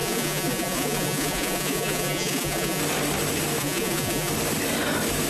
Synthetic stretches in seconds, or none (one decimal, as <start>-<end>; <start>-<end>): 0.0-2.8; 3.6-4.3